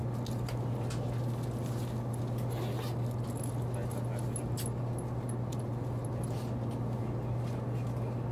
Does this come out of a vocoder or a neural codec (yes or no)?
no